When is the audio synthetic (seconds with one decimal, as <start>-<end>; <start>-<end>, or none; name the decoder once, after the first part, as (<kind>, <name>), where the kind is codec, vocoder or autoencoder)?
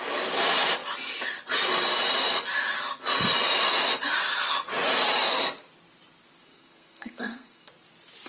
6.4-7.7 (codec, SNAC)